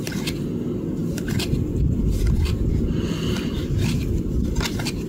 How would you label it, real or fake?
real